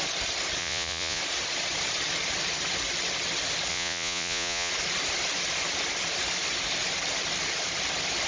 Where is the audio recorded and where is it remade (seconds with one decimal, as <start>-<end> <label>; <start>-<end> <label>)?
0.0-0.6 recorded; 0.6-1.2 remade; 1.2-3.7 recorded; 3.7-4.7 remade; 4.7-8.3 recorded